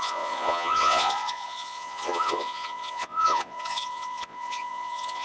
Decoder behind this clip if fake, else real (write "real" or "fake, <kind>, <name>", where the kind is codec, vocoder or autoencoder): fake, vocoder, Vocos